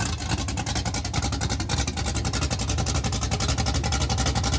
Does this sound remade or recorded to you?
recorded